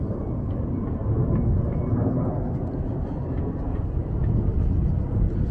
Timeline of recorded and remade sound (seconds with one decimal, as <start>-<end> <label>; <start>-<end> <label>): 0.0-5.5 recorded